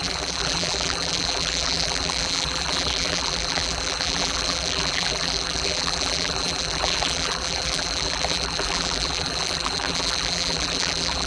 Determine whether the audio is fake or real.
fake